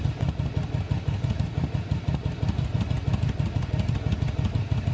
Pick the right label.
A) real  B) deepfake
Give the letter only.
A